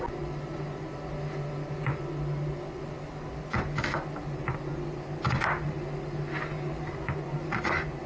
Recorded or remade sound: recorded